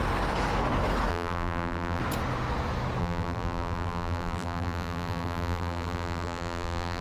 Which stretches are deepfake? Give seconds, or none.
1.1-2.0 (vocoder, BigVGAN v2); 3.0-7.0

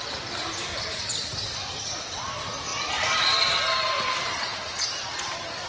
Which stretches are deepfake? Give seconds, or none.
0.0-4.5 (vocoder, BigVGAN v2)

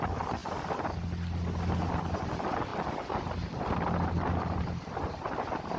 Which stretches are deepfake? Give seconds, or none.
none

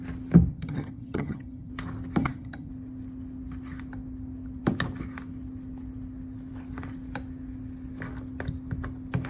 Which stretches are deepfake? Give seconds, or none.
0.5-1.7 (vocoder, HiFi-GAN); 2.2-2.7